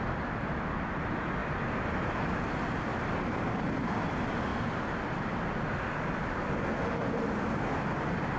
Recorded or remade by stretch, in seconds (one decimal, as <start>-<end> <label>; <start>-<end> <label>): 0.0-2.9 remade; 2.9-3.9 recorded; 3.9-4.5 remade; 4.5-7.5 recorded; 7.5-8.4 remade